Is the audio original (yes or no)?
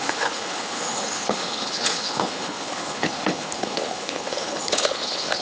no